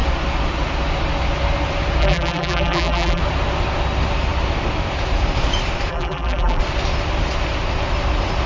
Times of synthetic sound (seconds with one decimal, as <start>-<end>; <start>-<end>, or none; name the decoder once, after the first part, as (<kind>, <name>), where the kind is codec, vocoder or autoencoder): 2.0-3.2 (vocoder, BigVGAN v2); 5.9-6.6